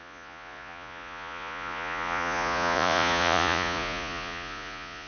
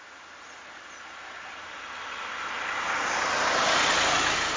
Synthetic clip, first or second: first